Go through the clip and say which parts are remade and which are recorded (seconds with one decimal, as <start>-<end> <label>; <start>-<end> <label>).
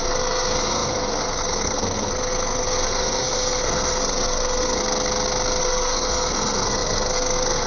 0.0-4.8 remade; 4.8-5.6 recorded; 5.6-7.7 remade